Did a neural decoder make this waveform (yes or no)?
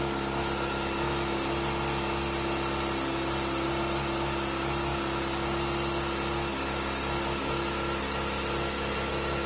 no